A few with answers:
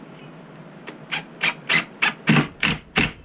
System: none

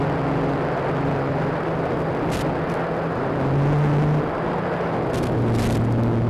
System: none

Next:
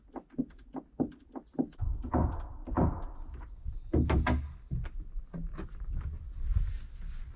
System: none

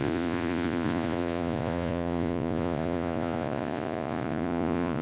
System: vocoder, Vocos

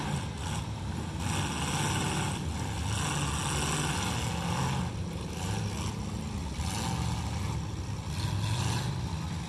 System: none